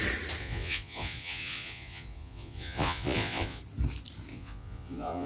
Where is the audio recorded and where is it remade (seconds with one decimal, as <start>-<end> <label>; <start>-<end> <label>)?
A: 0.0-0.4 recorded; 0.4-3.6 remade; 3.6-4.3 recorded; 4.3-5.3 remade